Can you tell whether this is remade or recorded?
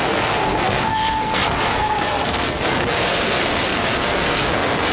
remade